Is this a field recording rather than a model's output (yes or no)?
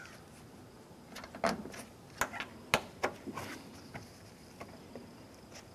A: yes